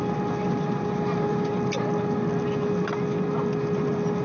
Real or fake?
real